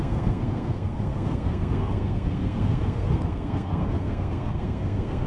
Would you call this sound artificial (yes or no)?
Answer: yes